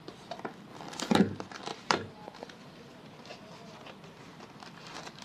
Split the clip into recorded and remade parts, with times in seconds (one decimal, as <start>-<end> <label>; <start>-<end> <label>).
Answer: 0.0-0.7 recorded; 0.7-1.2 remade; 1.2-1.7 recorded; 1.7-2.4 remade; 2.4-5.2 recorded